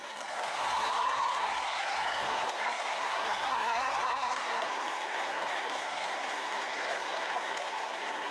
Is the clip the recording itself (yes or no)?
no